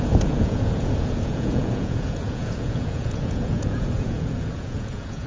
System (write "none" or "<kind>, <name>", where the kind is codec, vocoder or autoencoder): vocoder, Vocos